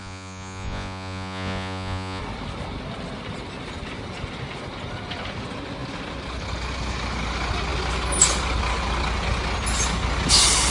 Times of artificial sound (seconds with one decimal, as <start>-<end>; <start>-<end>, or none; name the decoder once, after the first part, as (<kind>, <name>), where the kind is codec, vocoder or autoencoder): 0.0-2.2 (vocoder, Vocos)